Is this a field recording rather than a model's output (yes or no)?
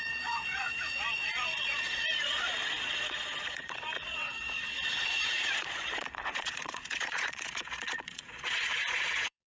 no